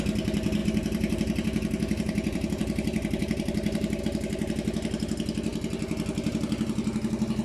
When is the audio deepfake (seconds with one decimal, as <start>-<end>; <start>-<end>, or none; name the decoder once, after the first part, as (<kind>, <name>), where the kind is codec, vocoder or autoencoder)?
0.6-4.0 (vocoder, BigVGAN v2)